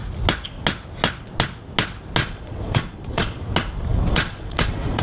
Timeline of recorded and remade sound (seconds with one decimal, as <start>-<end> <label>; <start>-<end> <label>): 0.0-2.2 recorded; 2.2-3.4 remade; 3.4-3.9 recorded; 3.9-5.0 remade